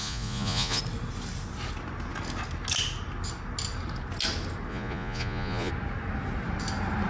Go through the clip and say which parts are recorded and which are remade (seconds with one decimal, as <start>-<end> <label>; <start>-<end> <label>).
0.0-0.8 remade; 0.8-4.7 recorded; 4.7-5.7 remade; 5.7-7.1 recorded

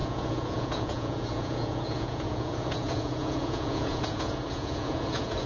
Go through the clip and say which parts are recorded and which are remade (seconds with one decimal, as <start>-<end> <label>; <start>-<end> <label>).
0.0-5.5 remade

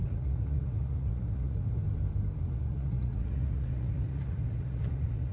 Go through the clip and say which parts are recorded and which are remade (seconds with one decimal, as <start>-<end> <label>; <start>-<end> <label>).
0.0-1.8 remade; 1.8-2.4 recorded; 2.4-5.3 remade

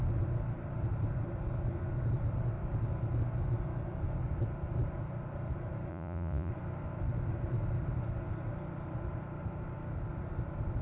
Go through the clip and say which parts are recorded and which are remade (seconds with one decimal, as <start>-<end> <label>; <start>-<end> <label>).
0.0-5.9 recorded; 5.9-6.5 remade; 6.5-10.8 recorded